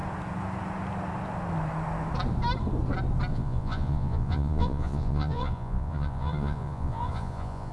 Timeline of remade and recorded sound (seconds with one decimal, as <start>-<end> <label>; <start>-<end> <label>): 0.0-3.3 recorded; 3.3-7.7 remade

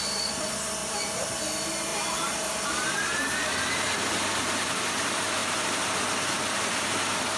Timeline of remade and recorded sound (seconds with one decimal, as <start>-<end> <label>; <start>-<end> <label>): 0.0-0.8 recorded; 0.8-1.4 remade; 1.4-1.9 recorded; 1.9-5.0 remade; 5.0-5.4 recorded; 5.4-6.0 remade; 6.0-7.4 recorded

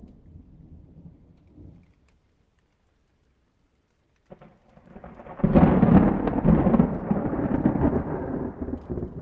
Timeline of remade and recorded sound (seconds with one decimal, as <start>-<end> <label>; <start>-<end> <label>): 0.0-9.2 recorded

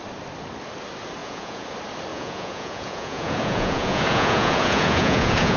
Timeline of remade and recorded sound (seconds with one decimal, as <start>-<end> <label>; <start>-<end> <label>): 0.0-1.2 recorded; 1.2-1.7 remade; 1.7-2.1 recorded; 2.1-5.6 remade

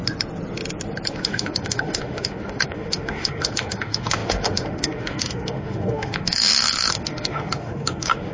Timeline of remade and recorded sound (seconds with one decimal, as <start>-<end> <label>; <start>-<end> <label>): 0.0-1.1 recorded; 1.1-8.3 remade